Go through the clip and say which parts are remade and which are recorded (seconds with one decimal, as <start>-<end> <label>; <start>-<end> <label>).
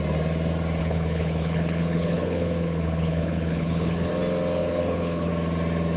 0.0-0.8 recorded; 0.8-4.1 remade; 4.1-4.6 recorded; 4.6-5.3 remade; 5.3-6.0 recorded